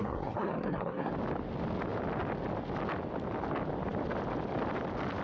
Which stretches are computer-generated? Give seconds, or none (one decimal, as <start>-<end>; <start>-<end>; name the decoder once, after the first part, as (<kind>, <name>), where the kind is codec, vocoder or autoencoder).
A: 0.0-1.1 (codec, SNAC)